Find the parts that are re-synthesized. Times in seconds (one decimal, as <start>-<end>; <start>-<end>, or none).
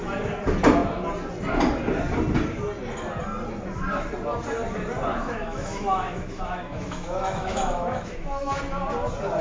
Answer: 5.1-8.6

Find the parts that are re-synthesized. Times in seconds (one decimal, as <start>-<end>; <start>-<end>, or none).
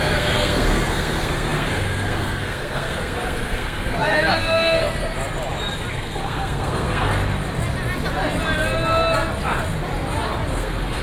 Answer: 0.0-4.8; 5.9-7.1; 10.5-11.0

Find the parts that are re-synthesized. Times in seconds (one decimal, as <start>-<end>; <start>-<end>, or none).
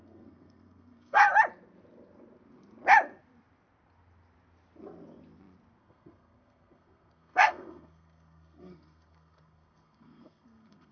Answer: 0.0-1.3; 5.8-10.9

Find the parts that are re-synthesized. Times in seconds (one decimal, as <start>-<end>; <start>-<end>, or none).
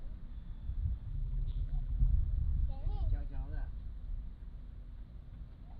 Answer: 1.1-2.1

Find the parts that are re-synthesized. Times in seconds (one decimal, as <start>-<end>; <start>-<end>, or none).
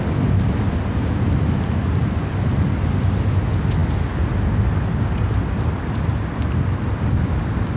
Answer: none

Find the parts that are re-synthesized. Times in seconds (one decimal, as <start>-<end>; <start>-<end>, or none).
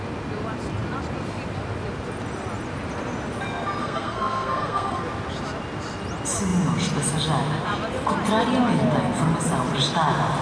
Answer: 3.8-5.0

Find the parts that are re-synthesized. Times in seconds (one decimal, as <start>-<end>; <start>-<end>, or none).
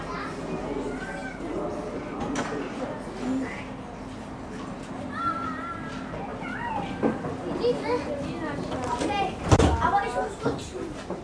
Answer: none